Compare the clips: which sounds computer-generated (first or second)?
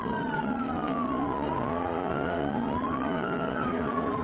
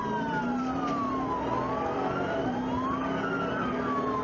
first